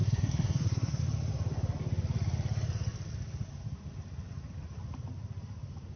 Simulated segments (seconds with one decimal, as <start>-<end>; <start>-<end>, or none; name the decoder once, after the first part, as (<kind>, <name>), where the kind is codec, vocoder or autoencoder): 0.0-1.0 (codec, SNAC)